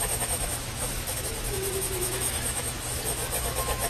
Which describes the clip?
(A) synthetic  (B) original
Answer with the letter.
A